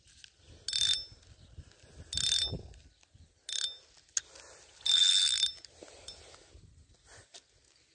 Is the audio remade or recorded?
recorded